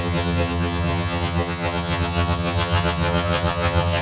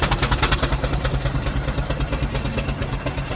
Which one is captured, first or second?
second